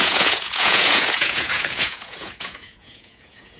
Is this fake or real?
fake